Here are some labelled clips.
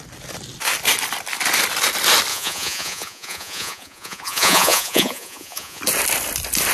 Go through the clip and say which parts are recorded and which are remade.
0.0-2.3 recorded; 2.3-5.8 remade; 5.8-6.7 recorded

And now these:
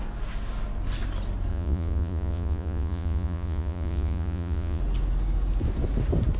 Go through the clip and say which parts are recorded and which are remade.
0.0-1.5 recorded; 1.5-4.8 remade; 4.8-6.4 recorded

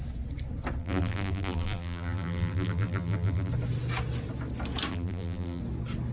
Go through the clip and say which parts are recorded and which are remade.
0.0-0.8 recorded; 0.8-3.5 remade; 3.5-4.9 recorded; 4.9-5.6 remade; 5.6-6.1 recorded

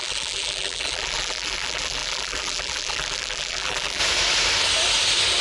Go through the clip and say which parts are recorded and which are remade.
0.0-4.0 remade; 4.0-5.4 recorded

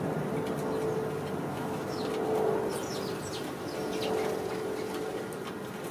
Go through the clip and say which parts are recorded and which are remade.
0.0-1.5 recorded; 1.5-2.0 remade; 2.0-5.9 recorded

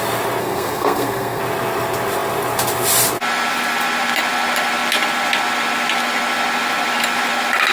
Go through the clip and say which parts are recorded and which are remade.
0.0-0.4 recorded; 0.4-1.4 remade; 1.4-7.7 recorded

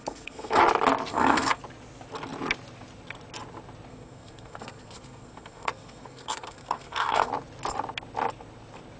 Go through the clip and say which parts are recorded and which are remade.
0.0-0.6 remade; 0.6-1.1 recorded; 1.1-1.6 remade; 1.6-3.9 recorded; 3.9-7.3 remade; 7.3-9.0 recorded

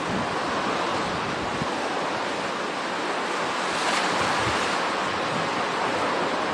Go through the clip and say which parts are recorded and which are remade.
0.0-6.5 recorded